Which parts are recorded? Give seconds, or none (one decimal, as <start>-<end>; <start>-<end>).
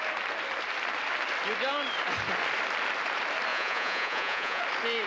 0.0-3.5; 4.6-5.1